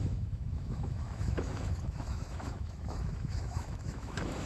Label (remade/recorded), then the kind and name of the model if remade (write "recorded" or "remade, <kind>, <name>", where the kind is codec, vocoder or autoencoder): remade, autoencoder, DAC-VAE